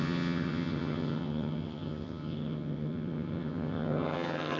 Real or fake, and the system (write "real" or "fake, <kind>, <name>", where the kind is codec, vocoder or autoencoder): fake, vocoder, HiFi-GAN